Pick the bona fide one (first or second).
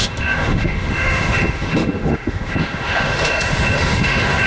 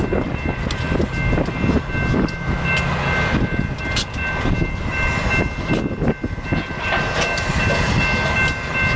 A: second